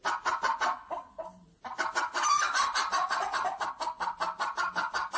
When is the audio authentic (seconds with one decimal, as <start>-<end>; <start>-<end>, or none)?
0.0-3.0; 3.7-5.2